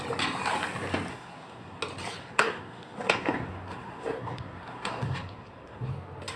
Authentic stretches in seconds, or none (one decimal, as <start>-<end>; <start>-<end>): 0.0-1.1; 1.8-2.2; 5.9-6.4